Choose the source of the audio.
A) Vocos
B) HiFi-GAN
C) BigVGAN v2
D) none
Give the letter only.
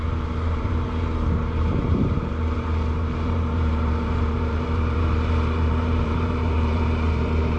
C